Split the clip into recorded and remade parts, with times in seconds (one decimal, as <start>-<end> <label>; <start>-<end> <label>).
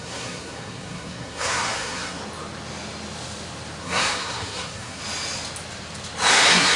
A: 0.0-2.2 remade; 2.2-3.8 recorded; 3.8-5.0 remade; 5.0-6.3 recorded; 6.3-6.8 remade